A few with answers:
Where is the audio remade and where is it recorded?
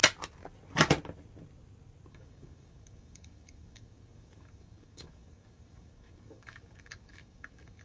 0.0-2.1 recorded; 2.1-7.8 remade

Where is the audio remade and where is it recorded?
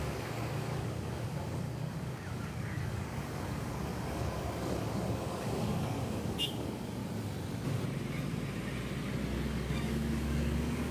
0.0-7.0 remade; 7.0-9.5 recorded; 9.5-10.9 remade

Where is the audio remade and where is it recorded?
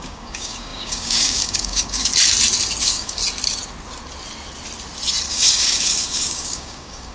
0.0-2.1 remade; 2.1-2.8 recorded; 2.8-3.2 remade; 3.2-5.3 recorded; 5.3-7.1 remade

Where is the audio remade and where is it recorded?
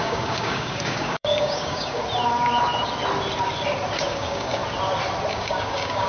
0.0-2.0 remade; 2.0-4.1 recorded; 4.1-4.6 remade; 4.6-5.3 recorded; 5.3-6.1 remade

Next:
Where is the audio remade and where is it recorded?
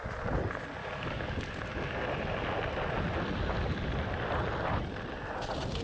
0.0-0.8 recorded; 0.8-1.5 remade; 1.5-5.8 recorded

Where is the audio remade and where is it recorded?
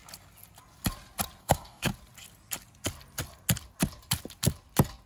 0.0-1.4 recorded; 1.4-1.9 remade; 1.9-5.1 recorded